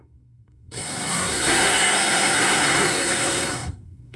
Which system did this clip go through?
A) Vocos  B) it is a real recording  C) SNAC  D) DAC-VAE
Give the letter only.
C